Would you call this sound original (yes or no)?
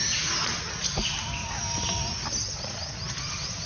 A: yes